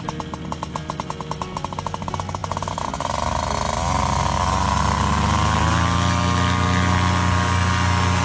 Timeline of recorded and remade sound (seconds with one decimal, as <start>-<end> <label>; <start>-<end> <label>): 0.0-8.2 recorded